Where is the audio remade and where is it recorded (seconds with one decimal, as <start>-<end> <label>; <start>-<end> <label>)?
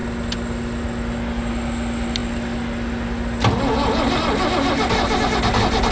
0.0-5.9 recorded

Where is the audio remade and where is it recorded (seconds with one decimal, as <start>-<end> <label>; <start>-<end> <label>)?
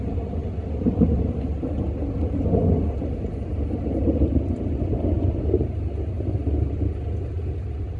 0.0-8.0 recorded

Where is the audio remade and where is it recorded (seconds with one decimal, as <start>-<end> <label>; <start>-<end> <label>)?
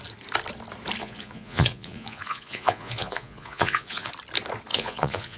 0.0-1.0 recorded; 1.0-4.1 remade; 4.1-4.7 recorded; 4.7-5.4 remade